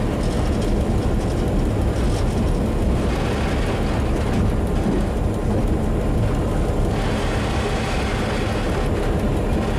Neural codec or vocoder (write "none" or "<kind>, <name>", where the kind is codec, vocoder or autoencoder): none